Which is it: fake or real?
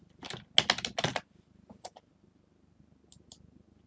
real